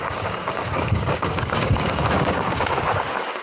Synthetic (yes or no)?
yes